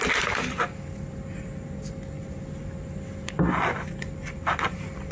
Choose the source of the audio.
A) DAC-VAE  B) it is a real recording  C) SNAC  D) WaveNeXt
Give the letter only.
B